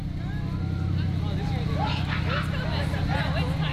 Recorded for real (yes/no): yes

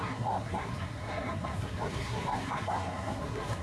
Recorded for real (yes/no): no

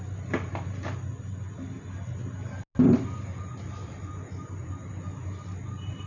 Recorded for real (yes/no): yes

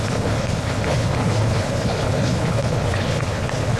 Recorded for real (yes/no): no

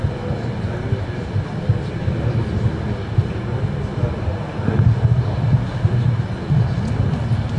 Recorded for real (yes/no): yes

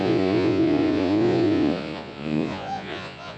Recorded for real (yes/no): no